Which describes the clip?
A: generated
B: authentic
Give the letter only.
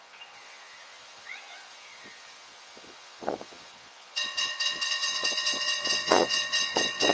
A